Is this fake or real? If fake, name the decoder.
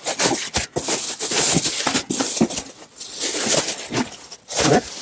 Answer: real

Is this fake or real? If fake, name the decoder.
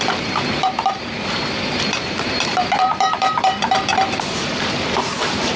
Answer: fake, vocoder, BigVGAN v2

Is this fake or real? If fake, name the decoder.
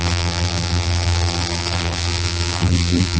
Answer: fake, vocoder, BigVGAN v2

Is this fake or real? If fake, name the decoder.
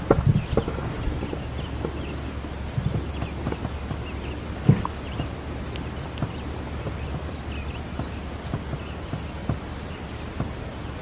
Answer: real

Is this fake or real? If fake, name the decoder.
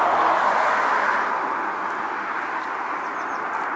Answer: real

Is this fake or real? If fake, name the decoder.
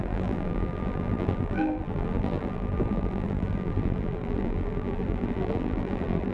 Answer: fake, vocoder, BigVGAN v2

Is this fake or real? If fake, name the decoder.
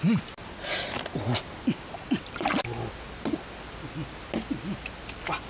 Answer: real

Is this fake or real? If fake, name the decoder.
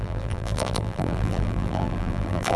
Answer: fake, vocoder, BigVGAN v2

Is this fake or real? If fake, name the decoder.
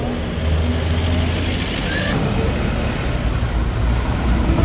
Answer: real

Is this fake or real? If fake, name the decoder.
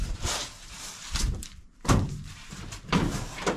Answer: fake, vocoder, BigVGAN v2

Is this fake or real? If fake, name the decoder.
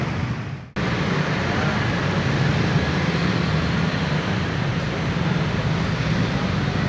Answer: real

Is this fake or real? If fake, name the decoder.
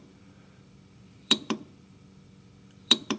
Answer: fake, vocoder, BigVGAN v2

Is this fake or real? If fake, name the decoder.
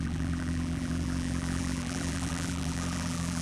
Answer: fake, vocoder, BigVGAN v2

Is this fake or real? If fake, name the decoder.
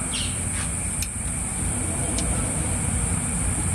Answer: real